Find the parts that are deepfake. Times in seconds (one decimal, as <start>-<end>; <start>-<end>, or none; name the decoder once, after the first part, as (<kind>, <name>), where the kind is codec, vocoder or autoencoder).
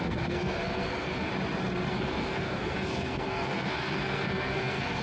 0.0-1.3 (codec, SNAC); 1.9-5.0